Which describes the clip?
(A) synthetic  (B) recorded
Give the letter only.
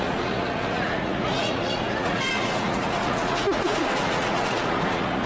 A